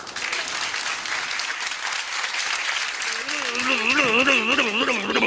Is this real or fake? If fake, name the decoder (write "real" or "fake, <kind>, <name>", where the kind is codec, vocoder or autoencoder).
real